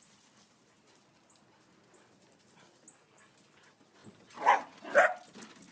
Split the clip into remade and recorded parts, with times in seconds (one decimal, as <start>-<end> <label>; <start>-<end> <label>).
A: 0.0-5.7 recorded